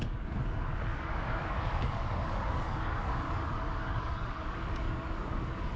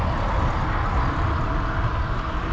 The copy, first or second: first